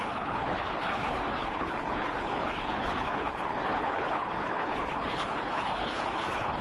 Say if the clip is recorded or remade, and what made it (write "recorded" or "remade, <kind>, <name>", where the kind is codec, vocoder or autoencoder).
remade, codec, HILCodec